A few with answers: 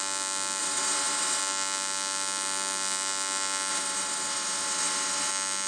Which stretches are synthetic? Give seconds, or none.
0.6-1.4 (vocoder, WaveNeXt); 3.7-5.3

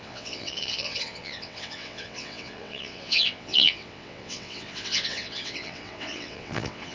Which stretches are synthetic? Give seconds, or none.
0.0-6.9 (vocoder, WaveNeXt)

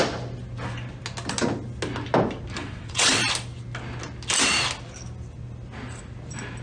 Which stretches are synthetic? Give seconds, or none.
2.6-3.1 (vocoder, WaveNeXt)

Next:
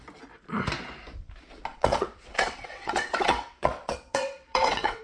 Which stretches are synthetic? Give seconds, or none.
1.7-5.0 (vocoder, WaveNeXt)